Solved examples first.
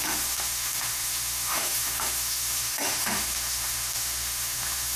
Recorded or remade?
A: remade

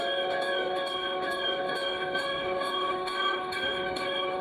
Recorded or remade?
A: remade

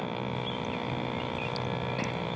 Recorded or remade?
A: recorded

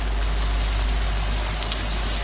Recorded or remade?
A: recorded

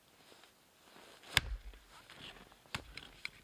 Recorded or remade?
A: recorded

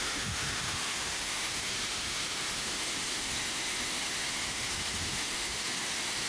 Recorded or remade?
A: remade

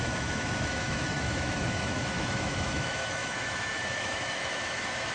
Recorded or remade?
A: remade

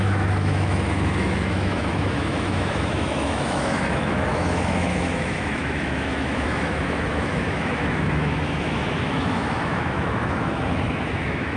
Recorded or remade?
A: remade